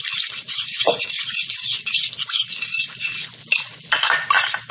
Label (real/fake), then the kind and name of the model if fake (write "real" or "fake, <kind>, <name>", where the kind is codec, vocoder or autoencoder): real